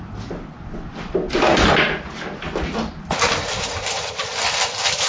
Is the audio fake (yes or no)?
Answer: no